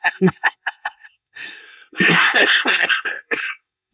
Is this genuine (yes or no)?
no